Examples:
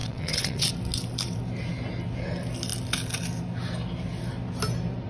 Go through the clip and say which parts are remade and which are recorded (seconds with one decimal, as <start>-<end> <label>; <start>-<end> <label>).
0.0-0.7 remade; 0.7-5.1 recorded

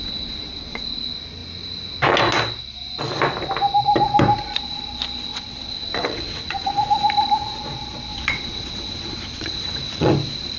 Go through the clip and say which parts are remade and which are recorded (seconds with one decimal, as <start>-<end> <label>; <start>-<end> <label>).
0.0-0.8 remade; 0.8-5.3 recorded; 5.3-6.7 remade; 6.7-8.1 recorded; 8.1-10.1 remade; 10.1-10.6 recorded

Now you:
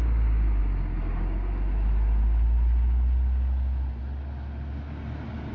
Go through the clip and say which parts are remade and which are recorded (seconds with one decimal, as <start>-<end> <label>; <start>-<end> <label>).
0.0-5.5 recorded